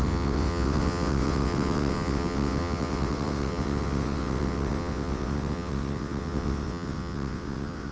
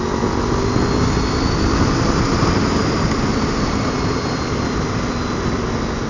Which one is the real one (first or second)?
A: second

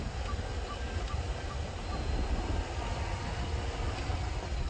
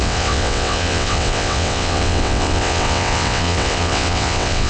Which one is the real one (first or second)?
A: first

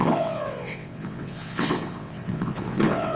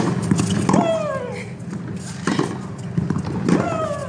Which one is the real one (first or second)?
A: second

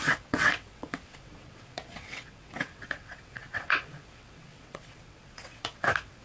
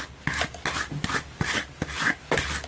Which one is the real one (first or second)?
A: second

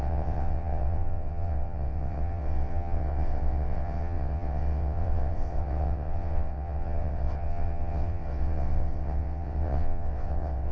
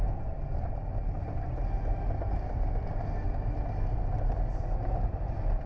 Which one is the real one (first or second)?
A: second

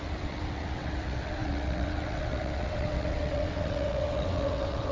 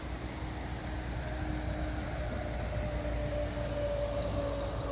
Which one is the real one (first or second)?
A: second